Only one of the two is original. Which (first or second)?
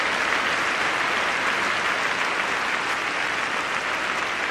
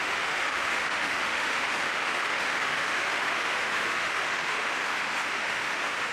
first